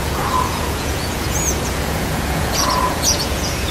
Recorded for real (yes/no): no